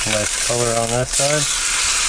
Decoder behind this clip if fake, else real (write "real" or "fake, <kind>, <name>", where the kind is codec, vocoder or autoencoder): real